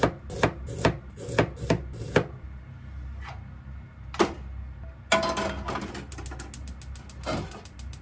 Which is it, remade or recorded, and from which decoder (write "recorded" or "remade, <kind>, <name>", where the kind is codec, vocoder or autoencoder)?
recorded